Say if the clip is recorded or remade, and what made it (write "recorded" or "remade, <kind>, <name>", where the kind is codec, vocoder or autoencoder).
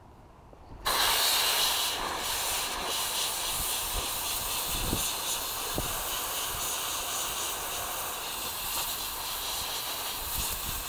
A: recorded